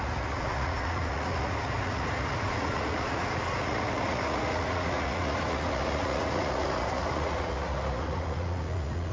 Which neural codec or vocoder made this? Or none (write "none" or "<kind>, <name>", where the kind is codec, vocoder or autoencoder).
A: vocoder, Vocos